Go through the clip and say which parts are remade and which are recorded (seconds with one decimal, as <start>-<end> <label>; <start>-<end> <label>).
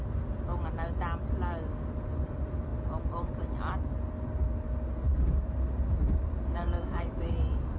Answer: 0.0-6.6 recorded; 6.6-7.3 remade; 7.3-7.8 recorded